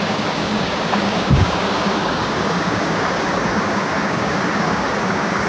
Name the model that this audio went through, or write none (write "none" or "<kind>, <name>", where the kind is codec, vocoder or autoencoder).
codec, DAC